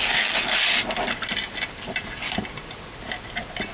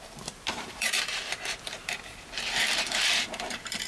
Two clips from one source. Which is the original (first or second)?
first